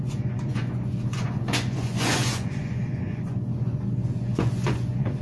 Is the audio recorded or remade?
remade